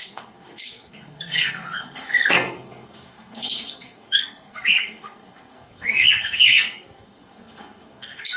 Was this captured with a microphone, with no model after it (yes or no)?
no